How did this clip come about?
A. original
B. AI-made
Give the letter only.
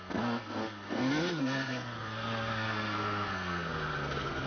B